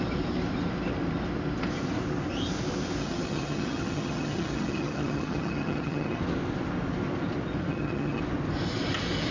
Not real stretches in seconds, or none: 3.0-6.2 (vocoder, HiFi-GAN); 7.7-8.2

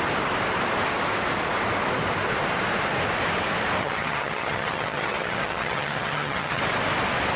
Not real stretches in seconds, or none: 3.8-6.6 (vocoder, HiFi-GAN)

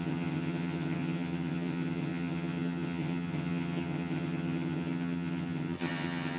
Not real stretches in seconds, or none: 0.0-6.4 (vocoder, HiFi-GAN)

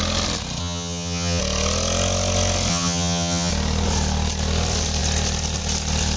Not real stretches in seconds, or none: 0.6-1.4 (vocoder, HiFi-GAN); 2.7-3.5

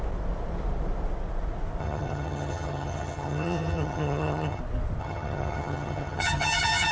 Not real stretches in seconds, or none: 1.8-4.6 (vocoder, HiFi-GAN); 5.0-6.9

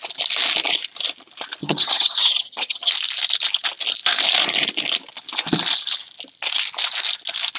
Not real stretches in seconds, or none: 1.6-2.9 (vocoder, HiFi-GAN)

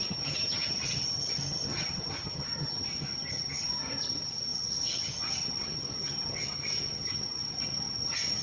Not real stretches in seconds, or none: 0.0-8.4 (vocoder, HiFi-GAN)

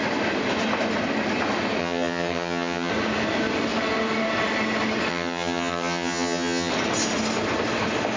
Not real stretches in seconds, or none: 1.8-2.9 (vocoder, HiFi-GAN); 5.1-6.7